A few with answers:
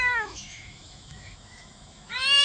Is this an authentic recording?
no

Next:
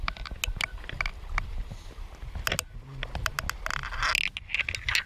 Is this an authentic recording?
yes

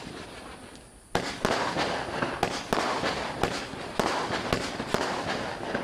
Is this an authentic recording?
yes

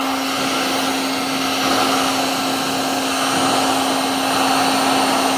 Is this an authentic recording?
yes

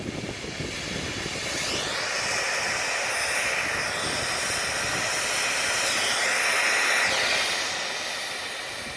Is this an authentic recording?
yes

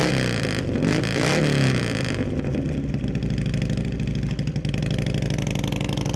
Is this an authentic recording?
yes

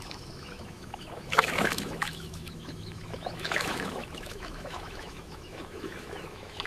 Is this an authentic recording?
no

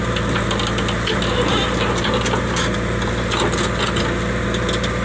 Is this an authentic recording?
yes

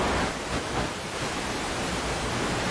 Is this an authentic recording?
yes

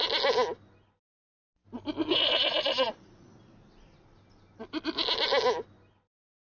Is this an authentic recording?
yes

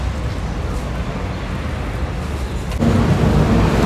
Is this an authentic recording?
yes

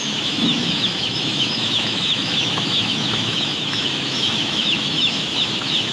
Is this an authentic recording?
no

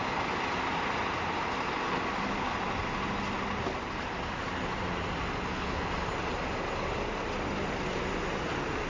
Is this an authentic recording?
yes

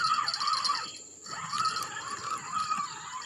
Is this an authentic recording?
yes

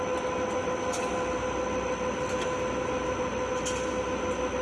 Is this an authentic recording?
yes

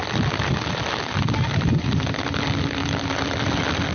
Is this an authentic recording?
yes